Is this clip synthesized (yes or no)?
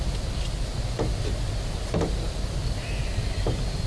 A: no